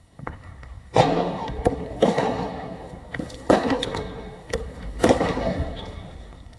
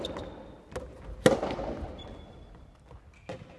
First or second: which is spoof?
first